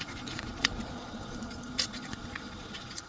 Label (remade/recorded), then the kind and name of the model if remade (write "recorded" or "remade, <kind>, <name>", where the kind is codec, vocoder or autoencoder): remade, vocoder, Vocos